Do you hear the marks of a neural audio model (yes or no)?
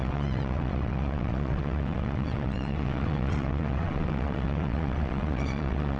yes